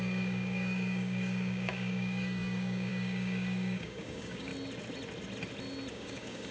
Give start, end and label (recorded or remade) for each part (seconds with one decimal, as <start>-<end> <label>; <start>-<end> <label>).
0.0-4.5 remade; 4.5-5.9 recorded; 5.9-6.5 remade